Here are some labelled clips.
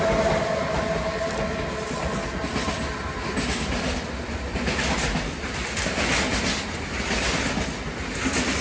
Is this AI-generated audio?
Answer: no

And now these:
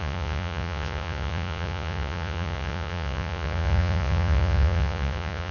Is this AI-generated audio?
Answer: yes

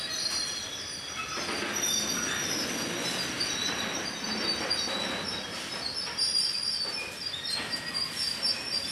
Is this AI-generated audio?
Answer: no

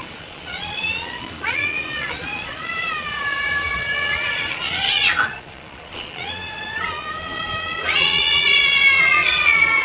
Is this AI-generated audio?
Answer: yes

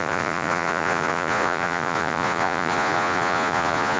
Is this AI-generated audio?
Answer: yes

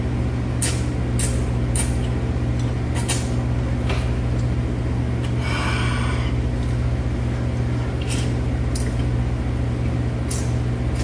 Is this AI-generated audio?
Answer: no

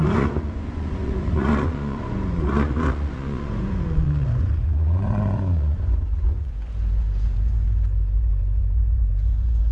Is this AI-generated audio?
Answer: yes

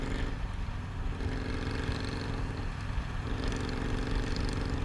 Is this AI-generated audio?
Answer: no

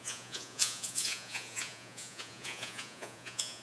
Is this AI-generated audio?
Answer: yes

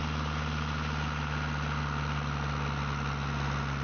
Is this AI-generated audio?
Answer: no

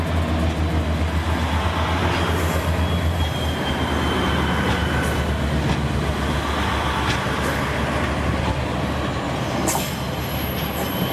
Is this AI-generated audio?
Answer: no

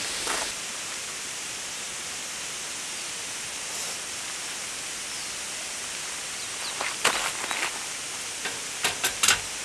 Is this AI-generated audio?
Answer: no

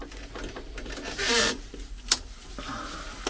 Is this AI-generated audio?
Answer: no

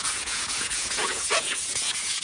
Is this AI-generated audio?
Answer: yes